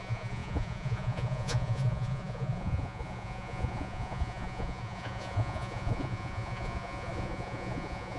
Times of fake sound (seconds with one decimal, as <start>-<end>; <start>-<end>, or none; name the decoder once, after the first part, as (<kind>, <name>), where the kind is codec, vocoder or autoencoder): 0.0-8.2 (vocoder, Vocos)